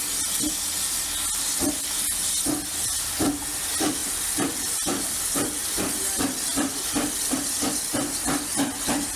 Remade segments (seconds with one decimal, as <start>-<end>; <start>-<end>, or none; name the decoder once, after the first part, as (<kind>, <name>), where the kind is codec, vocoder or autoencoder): 4.0-7.6 (vocoder, BigVGAN v2)